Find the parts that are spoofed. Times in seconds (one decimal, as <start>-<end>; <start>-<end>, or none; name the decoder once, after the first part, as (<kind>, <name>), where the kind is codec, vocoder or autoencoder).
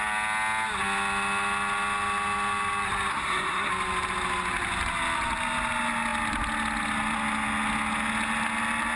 3.1-3.7 (codec, SNAC)